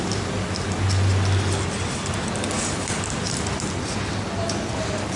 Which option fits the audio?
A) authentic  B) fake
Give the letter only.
A